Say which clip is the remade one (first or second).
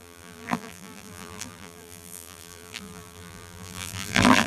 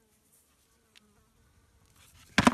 first